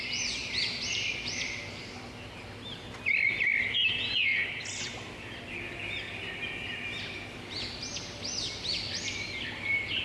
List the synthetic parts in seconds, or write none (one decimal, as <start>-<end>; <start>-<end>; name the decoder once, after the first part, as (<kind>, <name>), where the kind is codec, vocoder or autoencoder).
0.0-4.3 (vocoder, BigVGAN v2); 4.8-10.0